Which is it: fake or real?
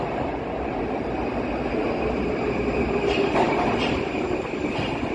real